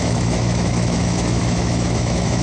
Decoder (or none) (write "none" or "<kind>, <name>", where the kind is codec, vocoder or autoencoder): autoencoder, DAC-VAE